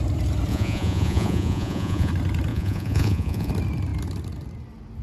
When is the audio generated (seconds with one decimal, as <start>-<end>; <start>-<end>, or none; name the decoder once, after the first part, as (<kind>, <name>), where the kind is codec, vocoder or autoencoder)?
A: 0.5-2.1 (vocoder, Vocos); 2.5-3.5